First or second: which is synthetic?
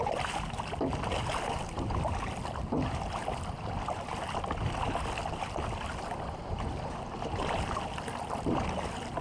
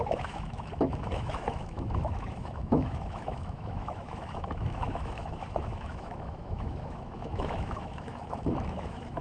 second